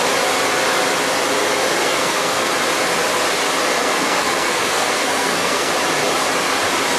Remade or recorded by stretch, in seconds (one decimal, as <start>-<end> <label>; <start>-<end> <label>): 0.0-1.8 recorded; 1.8-2.5 remade; 2.5-3.8 recorded; 3.8-5.7 remade; 5.7-7.0 recorded